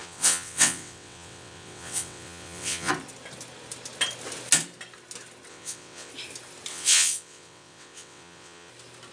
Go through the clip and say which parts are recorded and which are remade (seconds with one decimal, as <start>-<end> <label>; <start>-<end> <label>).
0.0-2.9 remade; 2.9-5.5 recorded; 5.5-6.1 remade; 6.1-6.7 recorded; 6.7-8.7 remade; 8.7-9.1 recorded